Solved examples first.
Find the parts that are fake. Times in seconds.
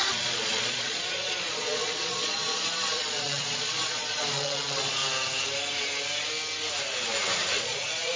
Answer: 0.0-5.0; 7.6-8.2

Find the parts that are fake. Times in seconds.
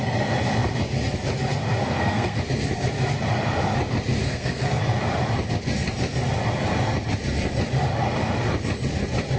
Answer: 1.8-2.4; 4.2-4.8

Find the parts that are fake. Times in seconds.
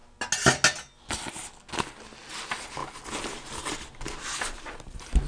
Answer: none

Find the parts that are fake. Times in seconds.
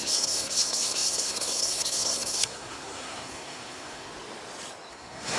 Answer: 0.0-4.1; 4.9-5.4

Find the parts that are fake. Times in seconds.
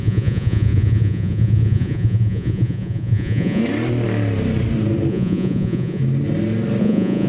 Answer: 0.0-3.6; 5.1-6.0; 6.8-7.3